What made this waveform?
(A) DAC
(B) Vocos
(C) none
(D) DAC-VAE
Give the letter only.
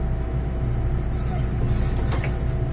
C